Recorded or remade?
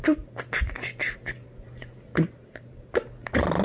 recorded